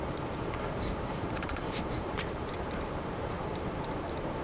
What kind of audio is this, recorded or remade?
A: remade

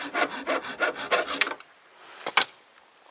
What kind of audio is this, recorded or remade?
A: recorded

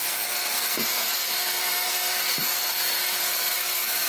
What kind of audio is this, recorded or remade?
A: remade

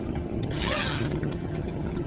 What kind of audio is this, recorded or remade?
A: remade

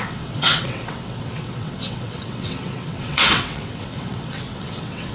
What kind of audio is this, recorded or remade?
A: remade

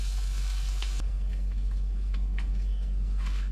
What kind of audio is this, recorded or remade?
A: remade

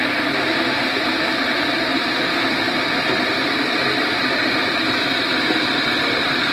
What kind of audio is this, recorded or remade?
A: remade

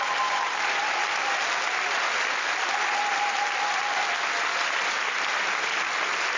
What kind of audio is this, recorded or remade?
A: recorded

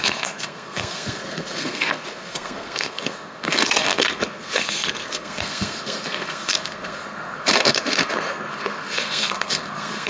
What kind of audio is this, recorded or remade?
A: remade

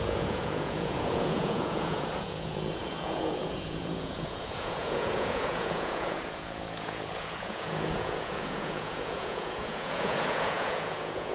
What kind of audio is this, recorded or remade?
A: remade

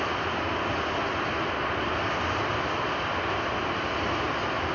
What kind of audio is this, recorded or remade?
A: recorded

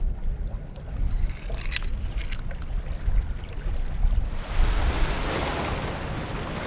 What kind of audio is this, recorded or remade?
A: recorded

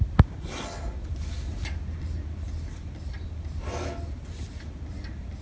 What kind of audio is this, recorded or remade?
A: recorded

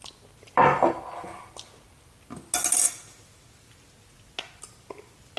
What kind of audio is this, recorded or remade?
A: recorded